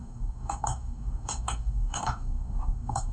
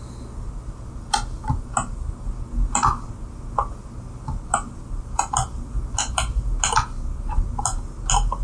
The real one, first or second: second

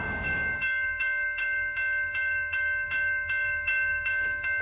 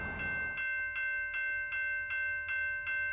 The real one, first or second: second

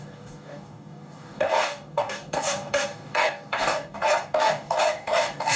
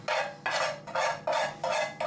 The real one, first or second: second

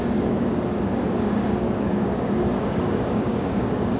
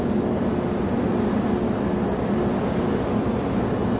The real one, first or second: second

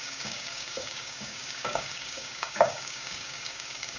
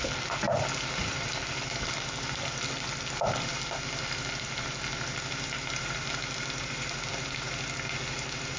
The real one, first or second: second